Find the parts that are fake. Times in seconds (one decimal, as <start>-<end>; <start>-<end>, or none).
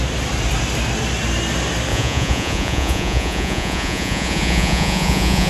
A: 1.9-5.5